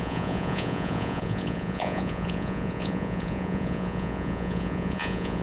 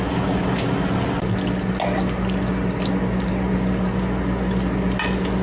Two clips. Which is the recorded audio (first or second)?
second